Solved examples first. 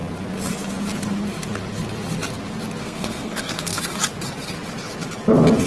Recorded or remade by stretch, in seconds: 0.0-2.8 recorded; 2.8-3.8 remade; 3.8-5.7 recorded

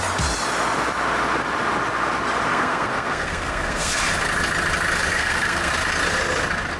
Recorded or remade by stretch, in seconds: 0.0-2.5 recorded; 2.5-4.0 remade; 4.0-5.1 recorded; 5.1-5.7 remade; 5.7-6.8 recorded

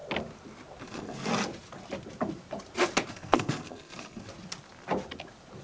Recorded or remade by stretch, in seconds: 0.0-0.8 recorded; 0.8-1.3 remade; 1.3-3.1 recorded; 3.1-4.3 remade; 4.3-5.6 recorded